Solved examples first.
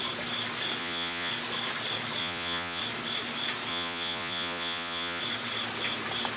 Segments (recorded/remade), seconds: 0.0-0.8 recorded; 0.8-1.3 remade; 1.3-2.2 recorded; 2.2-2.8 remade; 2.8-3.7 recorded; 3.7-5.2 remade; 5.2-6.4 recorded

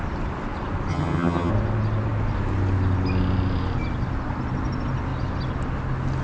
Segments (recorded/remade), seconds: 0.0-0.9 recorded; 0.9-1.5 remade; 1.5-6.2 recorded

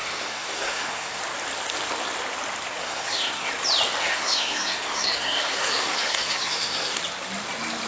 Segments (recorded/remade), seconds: 0.0-1.2 remade; 1.2-2.8 recorded; 2.8-3.5 remade; 3.5-4.0 recorded; 4.0-7.0 remade; 7.0-7.9 recorded

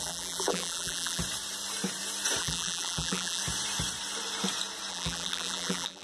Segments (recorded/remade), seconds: 0.0-1.2 remade; 1.2-2.4 recorded; 2.4-3.4 remade; 3.4-4.9 recorded; 4.9-6.0 remade